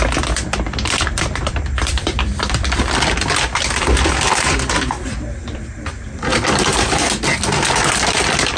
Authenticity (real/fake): fake